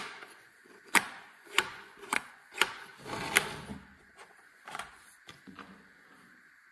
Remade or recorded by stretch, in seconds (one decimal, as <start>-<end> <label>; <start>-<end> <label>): 0.0-2.9 remade; 2.9-4.0 recorded; 4.0-6.7 remade